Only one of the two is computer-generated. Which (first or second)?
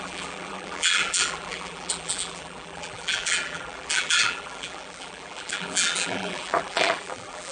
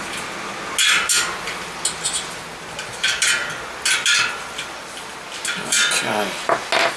first